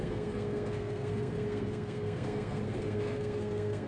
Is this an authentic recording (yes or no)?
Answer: no